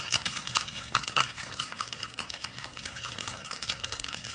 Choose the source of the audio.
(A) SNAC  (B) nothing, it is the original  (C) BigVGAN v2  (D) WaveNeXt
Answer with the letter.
A